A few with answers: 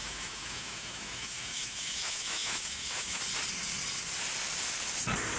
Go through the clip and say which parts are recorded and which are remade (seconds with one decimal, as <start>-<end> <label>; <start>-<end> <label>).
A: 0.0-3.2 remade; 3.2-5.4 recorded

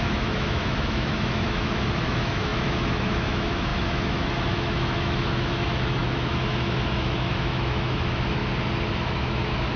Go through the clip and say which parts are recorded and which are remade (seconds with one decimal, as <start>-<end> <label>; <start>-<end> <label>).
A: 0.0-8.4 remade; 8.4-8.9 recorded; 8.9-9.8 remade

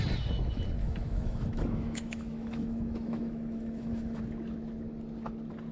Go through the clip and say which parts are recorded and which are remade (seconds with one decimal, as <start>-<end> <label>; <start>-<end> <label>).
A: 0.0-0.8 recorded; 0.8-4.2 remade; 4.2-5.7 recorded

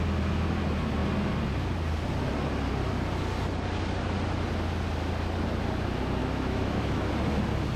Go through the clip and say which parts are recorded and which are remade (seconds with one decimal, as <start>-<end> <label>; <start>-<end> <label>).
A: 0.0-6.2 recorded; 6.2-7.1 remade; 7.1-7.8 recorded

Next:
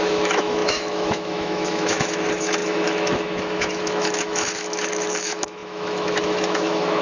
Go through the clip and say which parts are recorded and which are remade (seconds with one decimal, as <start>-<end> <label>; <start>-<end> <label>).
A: 0.0-7.0 remade

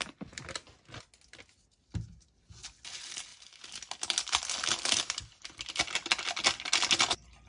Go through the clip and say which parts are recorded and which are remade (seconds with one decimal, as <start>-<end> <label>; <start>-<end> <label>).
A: 0.0-7.5 recorded